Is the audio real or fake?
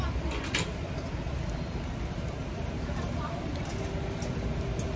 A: real